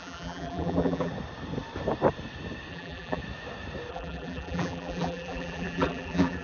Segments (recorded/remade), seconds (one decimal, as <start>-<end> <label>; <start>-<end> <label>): 0.0-1.1 remade; 1.1-2.7 recorded; 2.7-3.2 remade; 3.2-3.9 recorded; 3.9-6.4 remade